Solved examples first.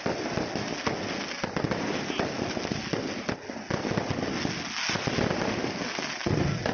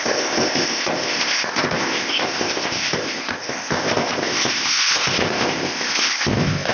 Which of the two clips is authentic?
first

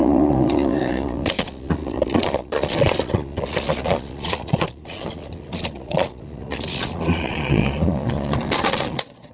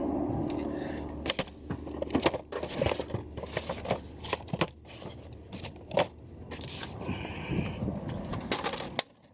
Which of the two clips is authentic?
second